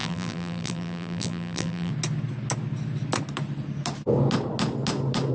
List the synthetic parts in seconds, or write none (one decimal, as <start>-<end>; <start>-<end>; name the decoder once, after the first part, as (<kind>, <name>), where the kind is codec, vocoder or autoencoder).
0.0-1.9 (vocoder, BigVGAN v2)